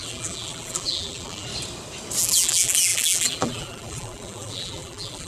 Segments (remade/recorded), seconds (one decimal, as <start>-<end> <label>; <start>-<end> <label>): 0.0-1.5 remade; 1.5-2.2 recorded; 2.2-5.3 remade